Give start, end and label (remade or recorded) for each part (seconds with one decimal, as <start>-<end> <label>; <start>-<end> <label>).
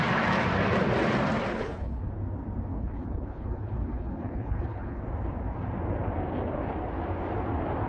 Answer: 0.0-1.5 recorded; 1.5-2.1 remade; 2.1-2.7 recorded; 2.7-5.0 remade; 5.0-7.9 recorded